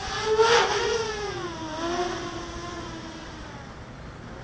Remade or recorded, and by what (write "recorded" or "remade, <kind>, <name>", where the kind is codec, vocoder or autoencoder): recorded